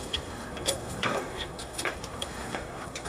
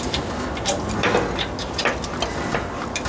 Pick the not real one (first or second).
first